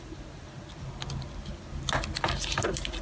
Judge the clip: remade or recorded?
recorded